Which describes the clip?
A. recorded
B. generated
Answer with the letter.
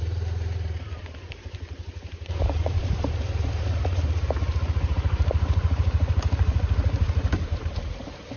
B